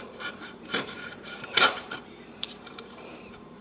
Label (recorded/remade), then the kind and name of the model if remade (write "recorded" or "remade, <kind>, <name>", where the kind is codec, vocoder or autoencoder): remade, vocoder, BigVGAN v2